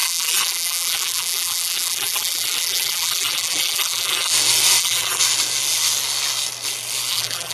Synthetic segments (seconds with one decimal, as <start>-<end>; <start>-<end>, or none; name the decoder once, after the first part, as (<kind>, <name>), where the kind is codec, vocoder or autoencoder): 0.0-4.3 (vocoder, BigVGAN v2); 4.8-5.2; 7.1-7.5